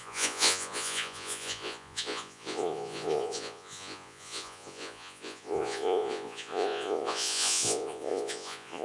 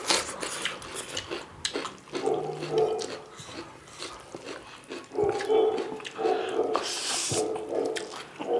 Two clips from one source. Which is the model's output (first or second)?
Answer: first